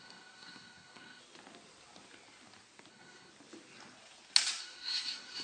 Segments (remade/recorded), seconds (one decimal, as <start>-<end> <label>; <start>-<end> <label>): 0.0-1.2 remade; 1.2-2.9 recorded; 2.9-3.3 remade; 3.3-4.6 recorded; 4.6-5.4 remade